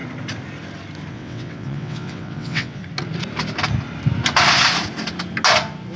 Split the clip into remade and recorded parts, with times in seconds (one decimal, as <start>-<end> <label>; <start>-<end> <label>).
0.0-1.1 recorded; 1.1-2.8 remade; 2.8-6.0 recorded